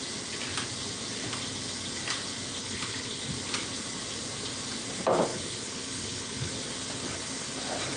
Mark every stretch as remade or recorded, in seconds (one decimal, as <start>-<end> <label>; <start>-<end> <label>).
0.0-2.6 recorded; 2.6-3.2 remade; 3.2-5.3 recorded; 5.3-6.5 remade; 6.5-8.0 recorded